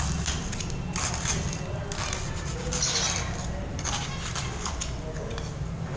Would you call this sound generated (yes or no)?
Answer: no